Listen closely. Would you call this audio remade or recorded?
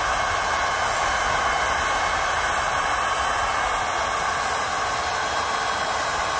recorded